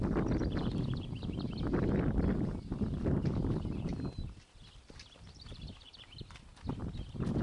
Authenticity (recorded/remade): recorded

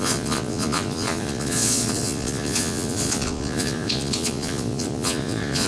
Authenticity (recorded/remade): remade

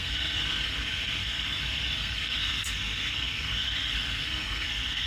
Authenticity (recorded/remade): remade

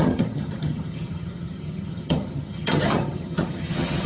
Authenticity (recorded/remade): remade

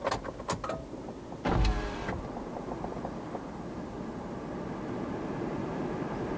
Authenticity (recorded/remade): recorded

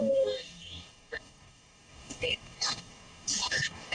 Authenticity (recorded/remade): remade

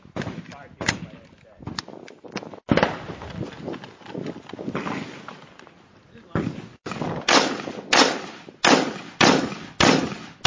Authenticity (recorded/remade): recorded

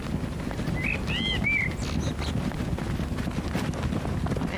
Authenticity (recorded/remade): recorded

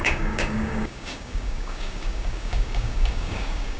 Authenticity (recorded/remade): remade